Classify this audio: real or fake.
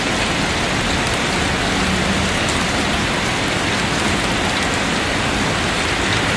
real